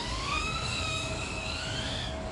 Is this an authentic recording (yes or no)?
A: no